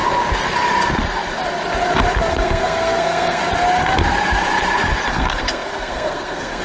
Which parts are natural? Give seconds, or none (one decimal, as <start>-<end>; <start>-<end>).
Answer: 0.0-2.3; 3.4-5.1